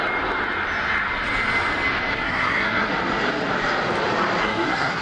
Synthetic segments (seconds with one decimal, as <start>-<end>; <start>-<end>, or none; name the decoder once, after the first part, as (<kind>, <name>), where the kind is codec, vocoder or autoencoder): 2.1-2.9 (codec, SNAC); 4.4-5.0